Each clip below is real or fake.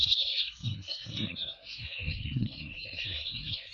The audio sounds fake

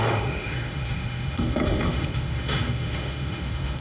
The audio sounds fake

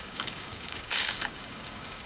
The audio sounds fake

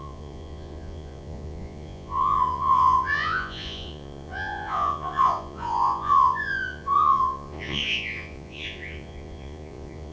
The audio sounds fake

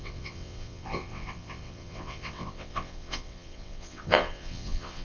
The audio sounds fake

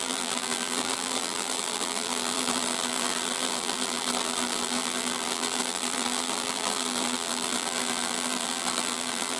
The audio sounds fake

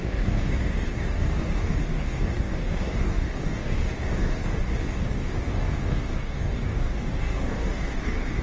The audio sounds fake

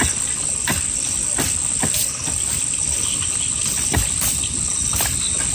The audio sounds real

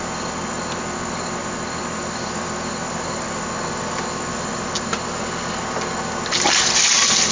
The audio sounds real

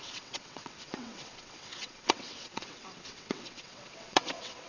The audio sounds fake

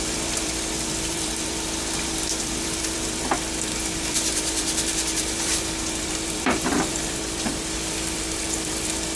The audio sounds fake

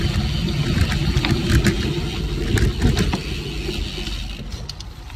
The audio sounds real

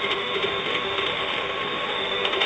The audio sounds fake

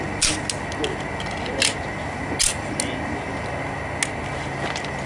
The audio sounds real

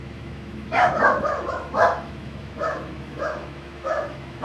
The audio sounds fake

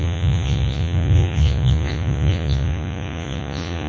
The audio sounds fake